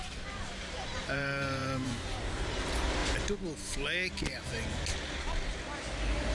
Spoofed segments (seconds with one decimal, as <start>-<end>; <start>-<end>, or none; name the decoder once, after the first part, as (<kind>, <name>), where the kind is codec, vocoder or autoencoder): 0.0-3.0 (vocoder, BigVGAN v2)